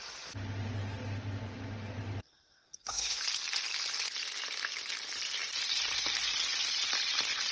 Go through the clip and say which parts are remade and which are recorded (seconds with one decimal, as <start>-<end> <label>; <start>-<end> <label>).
0.0-2.2 recorded; 2.2-3.2 remade; 3.2-7.5 recorded